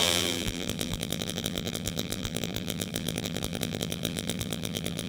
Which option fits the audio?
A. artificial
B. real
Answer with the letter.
A